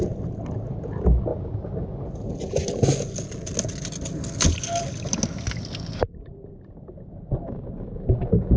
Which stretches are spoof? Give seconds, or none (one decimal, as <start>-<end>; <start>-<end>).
none